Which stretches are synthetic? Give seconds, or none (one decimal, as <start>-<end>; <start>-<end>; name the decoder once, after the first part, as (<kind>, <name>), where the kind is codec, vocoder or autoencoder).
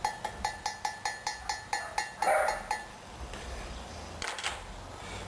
2.9-3.9 (codec, DAC)